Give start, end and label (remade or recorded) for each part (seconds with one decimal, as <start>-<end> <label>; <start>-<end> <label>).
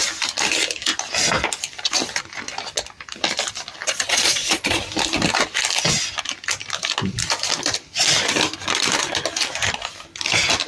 0.0-3.8 recorded; 3.8-4.8 remade; 4.8-10.7 recorded